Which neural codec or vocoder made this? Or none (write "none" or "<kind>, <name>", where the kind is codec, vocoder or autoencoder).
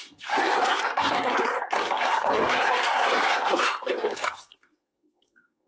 codec, SNAC